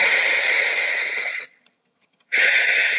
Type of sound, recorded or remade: remade